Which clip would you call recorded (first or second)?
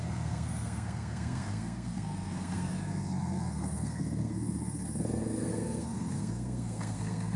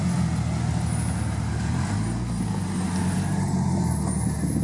second